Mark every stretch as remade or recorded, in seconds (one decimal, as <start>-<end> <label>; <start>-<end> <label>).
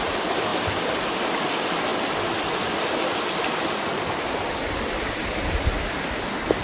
0.0-1.9 recorded; 1.9-5.9 remade; 5.9-6.6 recorded